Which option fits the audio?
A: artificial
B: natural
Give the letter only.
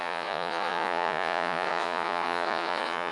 A